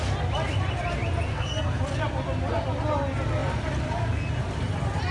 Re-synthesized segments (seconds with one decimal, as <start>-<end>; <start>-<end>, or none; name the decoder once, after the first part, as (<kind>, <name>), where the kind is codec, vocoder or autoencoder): 1.3-1.8 (codec, SNAC)

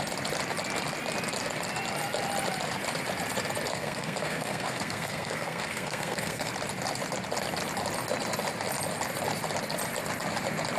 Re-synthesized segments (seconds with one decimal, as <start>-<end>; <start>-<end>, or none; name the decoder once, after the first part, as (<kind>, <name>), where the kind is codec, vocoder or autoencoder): 3.7-6.5 (codec, SNAC)

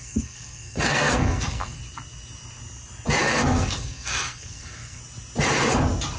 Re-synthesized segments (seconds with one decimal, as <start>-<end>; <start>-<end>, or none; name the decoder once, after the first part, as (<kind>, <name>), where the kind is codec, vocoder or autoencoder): 0.0-1.8 (codec, SNAC); 3.2-5.0

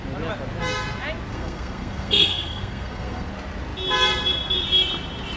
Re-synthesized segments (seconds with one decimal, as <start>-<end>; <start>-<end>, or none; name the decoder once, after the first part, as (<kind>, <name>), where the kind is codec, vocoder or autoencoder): 1.3-3.3 (codec, SNAC)

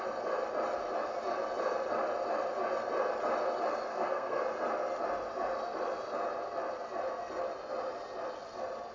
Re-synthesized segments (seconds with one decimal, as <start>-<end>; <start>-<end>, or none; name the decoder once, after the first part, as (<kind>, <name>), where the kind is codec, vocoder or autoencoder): 3.9-4.4 (codec, SNAC)

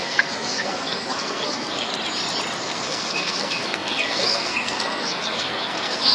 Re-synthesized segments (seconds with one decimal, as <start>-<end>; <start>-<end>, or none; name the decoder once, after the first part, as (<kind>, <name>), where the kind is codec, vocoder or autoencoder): 0.0-1.9 (codec, SNAC); 2.6-6.1

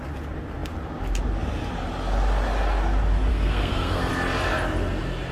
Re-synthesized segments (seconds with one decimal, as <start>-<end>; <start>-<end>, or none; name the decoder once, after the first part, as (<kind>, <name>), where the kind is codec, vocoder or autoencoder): 3.3-4.1 (codec, SNAC)